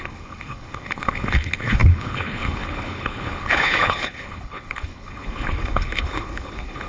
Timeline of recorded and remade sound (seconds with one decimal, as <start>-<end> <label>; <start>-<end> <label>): 0.0-6.9 remade